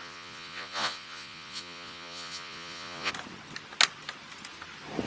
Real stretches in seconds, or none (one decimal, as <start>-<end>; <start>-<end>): 3.1-5.1